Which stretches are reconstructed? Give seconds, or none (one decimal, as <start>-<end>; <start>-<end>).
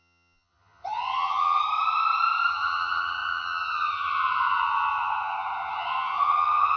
0.0-1.6; 2.5-6.8